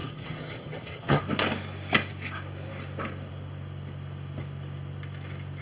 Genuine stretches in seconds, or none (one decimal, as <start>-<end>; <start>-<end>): 1.2-5.6